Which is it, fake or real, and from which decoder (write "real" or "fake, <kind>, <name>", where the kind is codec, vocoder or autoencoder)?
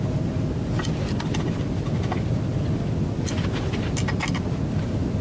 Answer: real